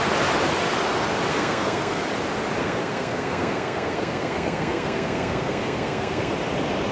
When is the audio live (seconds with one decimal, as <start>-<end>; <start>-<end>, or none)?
0.0-1.3; 2.0-2.6; 6.3-6.9